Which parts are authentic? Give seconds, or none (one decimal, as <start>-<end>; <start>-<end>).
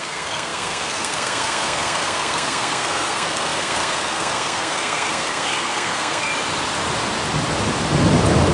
6.3-8.5